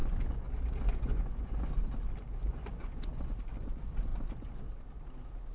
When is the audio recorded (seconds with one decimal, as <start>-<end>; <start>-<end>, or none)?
1.7-2.3; 3.3-5.5

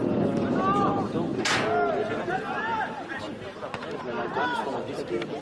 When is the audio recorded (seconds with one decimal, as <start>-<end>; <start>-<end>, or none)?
0.0-5.4

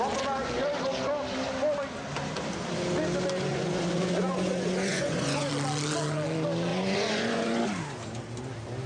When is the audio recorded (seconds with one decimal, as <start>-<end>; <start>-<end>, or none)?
0.0-3.5; 5.5-6.7; 7.6-8.9